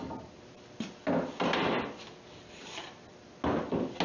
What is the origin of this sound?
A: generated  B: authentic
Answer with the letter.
B